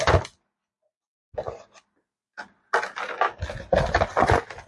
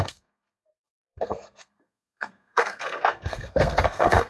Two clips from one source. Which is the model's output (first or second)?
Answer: second